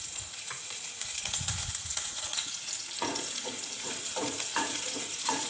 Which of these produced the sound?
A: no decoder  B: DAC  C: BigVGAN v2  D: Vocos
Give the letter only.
D